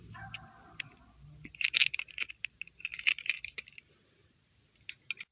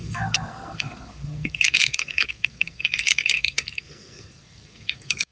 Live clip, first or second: first